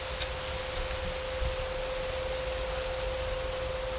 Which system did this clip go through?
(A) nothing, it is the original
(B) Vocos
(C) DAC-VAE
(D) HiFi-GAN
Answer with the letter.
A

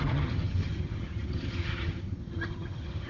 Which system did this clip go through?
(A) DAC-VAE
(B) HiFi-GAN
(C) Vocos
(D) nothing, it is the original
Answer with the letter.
B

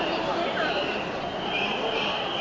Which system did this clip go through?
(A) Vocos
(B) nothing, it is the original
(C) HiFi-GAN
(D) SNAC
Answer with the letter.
B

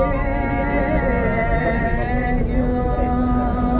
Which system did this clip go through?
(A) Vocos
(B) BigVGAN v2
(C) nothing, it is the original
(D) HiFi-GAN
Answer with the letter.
C